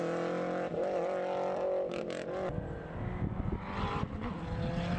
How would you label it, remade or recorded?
recorded